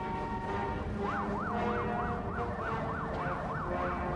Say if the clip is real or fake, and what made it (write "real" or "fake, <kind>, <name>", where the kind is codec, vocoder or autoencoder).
real